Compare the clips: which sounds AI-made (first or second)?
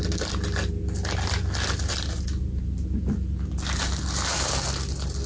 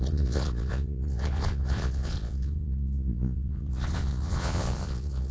second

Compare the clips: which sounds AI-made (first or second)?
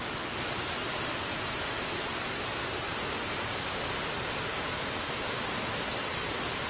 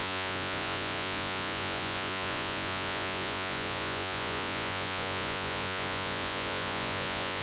second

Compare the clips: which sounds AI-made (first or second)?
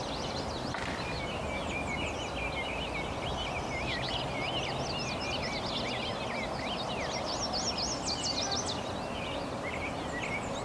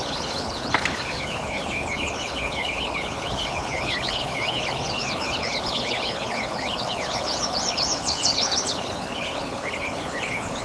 second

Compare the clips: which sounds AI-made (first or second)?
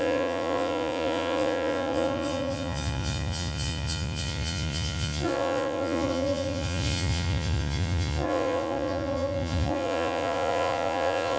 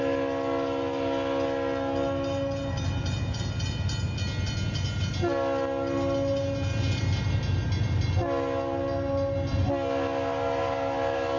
first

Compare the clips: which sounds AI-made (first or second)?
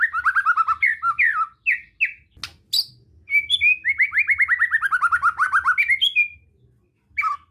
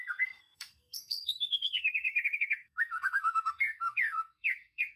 second